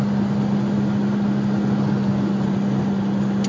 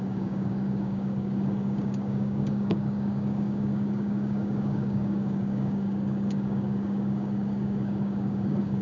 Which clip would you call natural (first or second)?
first